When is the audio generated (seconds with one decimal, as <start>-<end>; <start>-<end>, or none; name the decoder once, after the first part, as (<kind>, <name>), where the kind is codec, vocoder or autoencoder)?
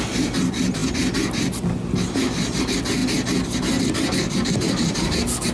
none